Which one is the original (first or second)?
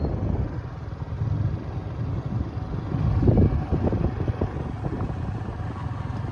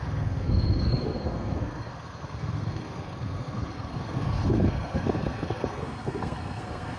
first